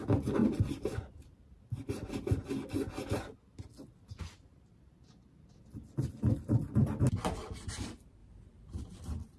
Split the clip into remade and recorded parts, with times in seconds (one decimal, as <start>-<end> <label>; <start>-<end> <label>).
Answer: 0.0-0.4 remade; 0.4-5.5 recorded; 5.5-6.6 remade; 6.6-7.3 recorded; 7.3-8.2 remade; 8.2-8.8 recorded; 8.8-9.4 remade